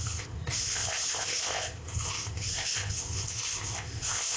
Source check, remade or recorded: remade